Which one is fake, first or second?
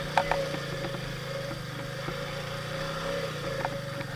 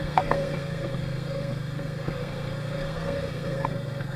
second